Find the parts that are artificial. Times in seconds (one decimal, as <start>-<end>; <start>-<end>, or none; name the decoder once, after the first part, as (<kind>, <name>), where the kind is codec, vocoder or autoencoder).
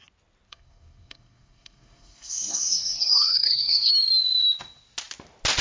0.5-3.9 (codec, SNAC)